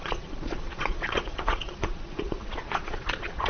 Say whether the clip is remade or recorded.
remade